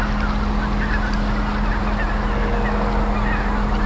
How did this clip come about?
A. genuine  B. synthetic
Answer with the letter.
A